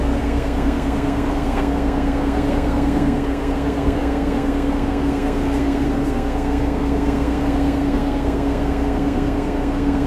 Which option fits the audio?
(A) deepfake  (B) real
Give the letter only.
A